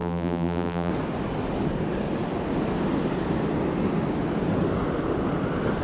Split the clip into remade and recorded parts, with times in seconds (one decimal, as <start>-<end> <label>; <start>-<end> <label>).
0.0-0.9 remade; 0.9-5.8 recorded